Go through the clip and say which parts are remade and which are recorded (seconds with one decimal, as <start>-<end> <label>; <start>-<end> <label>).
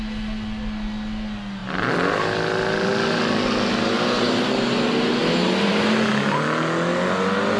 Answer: 0.0-7.6 recorded